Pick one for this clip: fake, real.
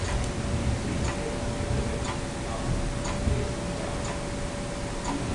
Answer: real